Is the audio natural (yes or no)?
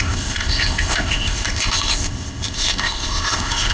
no